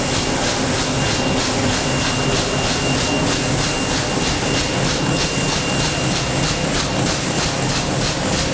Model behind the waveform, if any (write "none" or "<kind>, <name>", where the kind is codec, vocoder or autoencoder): none